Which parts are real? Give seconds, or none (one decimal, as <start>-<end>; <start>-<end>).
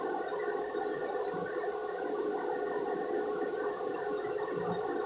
0.0-5.1